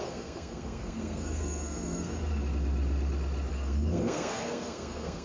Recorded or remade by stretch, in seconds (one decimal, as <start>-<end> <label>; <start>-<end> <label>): 0.0-2.1 remade; 2.1-3.5 recorded; 3.5-5.2 remade